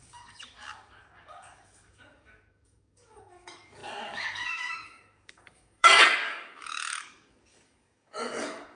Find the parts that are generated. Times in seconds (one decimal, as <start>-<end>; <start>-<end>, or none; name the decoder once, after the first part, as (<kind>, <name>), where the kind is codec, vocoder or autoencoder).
0.0-8.8 (codec, DAC)